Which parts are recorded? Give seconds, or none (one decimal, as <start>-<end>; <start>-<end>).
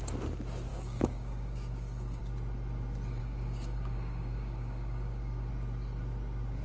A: 0.0-0.7; 2.2-3.2; 5.5-6.6